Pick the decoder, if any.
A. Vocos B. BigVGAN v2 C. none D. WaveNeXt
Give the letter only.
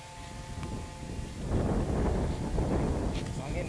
C